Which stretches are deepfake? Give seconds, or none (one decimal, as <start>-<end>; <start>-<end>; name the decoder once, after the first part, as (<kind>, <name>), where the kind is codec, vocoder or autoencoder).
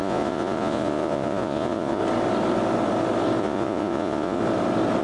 0.0-2.0 (vocoder, Vocos); 3.4-4.4